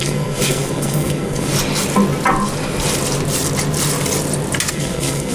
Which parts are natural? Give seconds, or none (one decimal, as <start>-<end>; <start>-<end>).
1.5-4.7